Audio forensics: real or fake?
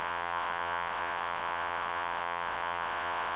fake